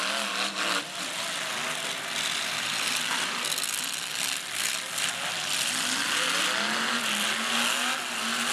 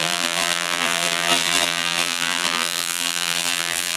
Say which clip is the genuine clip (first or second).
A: first